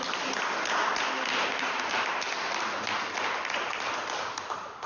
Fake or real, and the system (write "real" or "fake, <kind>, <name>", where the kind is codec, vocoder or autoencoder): real